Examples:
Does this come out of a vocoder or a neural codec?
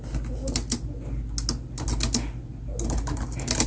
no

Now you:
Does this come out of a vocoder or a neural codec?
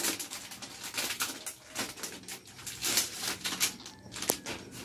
no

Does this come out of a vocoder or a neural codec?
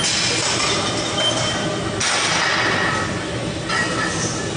no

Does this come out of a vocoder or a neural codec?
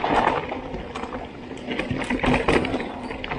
no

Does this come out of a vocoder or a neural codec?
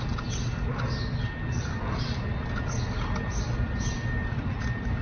no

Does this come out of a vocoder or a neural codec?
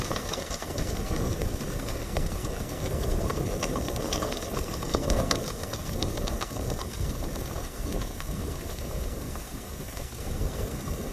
yes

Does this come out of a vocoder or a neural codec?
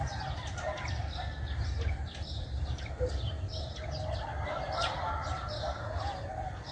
no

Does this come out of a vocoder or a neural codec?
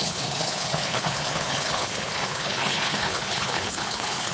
yes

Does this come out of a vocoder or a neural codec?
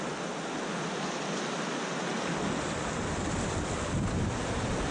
no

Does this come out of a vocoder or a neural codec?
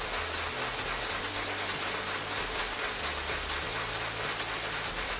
no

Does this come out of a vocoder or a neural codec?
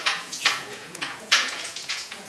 yes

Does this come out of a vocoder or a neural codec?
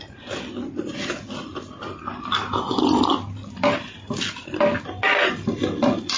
no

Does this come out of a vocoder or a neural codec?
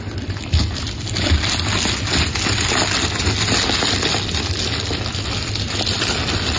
no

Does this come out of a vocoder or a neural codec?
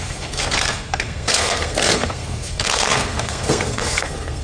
yes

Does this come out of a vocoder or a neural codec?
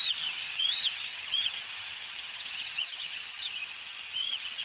yes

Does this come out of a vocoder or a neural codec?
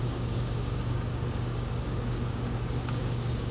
yes